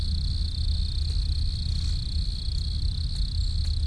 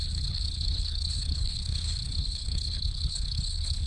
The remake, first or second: second